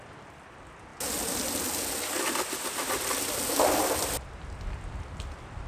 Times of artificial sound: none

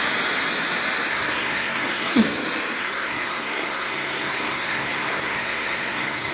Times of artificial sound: 1.1-2.2 (codec, SNAC); 2.8-6.3